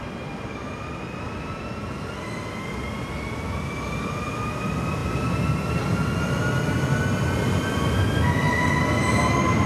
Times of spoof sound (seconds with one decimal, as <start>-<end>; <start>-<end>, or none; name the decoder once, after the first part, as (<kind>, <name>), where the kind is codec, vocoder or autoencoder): none